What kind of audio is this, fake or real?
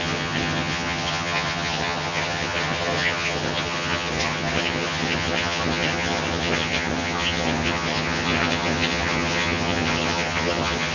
fake